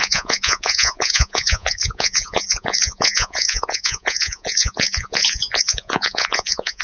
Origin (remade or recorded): remade